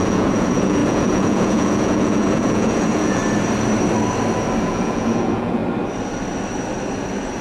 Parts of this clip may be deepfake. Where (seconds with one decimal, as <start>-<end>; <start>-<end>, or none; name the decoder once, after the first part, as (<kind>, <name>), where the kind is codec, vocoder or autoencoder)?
0.0-3.2 (vocoder, Vocos); 4.6-5.6